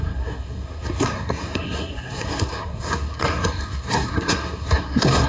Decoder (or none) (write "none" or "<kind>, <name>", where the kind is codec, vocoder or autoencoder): codec, SNAC